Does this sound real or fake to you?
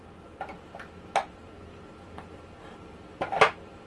real